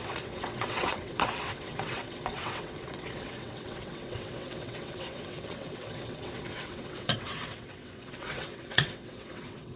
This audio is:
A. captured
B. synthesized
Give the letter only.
B